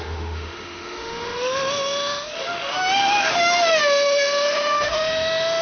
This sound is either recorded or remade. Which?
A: remade